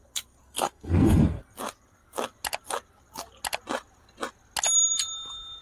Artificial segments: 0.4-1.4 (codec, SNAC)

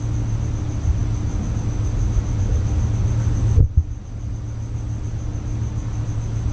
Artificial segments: none

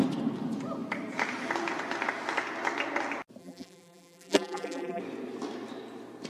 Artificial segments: 3.4-5.0 (vocoder, BigVGAN v2)

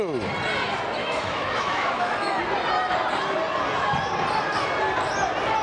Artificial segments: 1.0-2.4 (autoencoder, DAC-VAE)

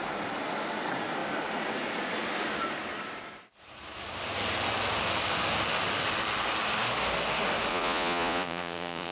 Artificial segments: 7.7-9.1 (vocoder, Vocos)

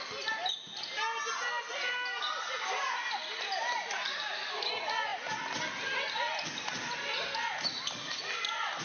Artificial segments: none

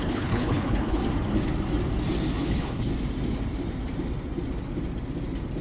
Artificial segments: 0.0-1.0 (codec, HILCodec); 2.4-2.9

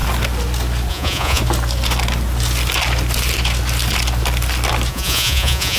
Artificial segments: 0.9-1.4 (vocoder, Vocos); 4.9-5.8